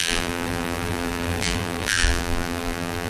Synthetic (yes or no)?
yes